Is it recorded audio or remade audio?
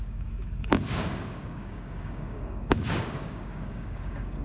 remade